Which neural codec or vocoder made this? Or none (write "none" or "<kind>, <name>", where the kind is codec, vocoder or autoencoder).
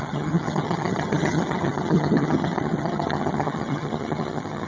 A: vocoder, HiFi-GAN